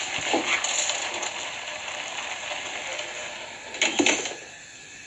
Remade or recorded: recorded